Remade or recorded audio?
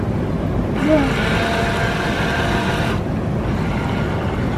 recorded